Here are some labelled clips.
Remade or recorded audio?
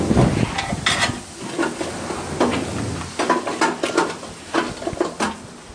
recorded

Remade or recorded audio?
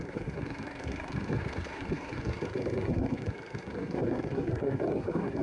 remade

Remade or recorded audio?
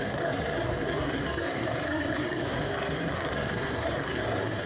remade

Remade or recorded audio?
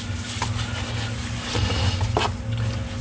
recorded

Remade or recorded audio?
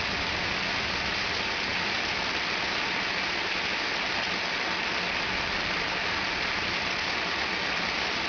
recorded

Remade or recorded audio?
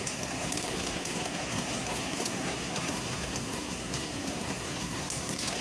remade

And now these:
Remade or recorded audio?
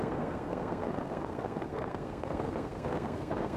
remade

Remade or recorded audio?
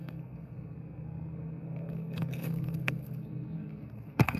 remade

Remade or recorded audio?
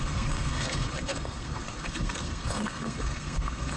remade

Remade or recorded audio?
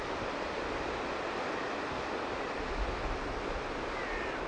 recorded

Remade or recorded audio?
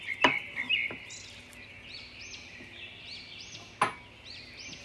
recorded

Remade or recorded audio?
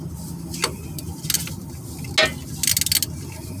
recorded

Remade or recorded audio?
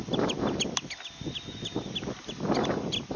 recorded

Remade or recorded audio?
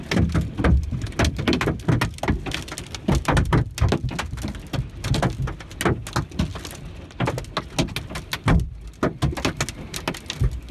recorded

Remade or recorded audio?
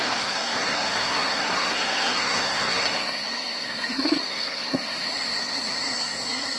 remade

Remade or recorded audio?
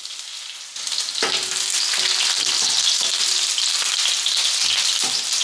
recorded